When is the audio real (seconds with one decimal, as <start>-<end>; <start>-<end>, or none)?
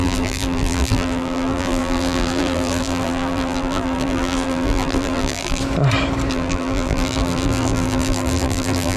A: 5.6-6.3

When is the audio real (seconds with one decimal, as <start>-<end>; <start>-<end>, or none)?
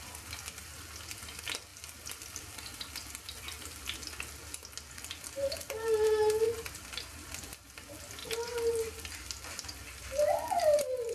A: 0.0-1.7; 3.4-11.1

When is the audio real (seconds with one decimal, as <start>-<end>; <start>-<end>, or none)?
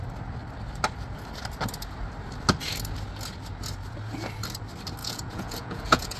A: 0.0-5.0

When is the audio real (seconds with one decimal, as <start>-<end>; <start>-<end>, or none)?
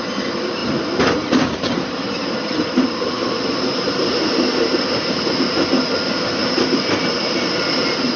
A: 0.0-0.6; 5.4-6.4